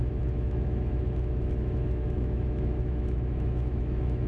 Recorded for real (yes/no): no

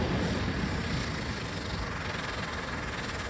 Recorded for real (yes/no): yes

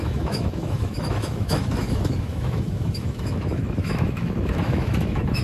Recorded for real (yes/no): no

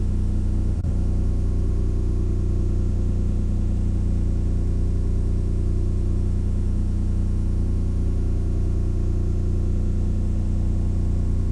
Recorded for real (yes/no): no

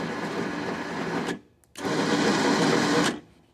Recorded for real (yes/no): yes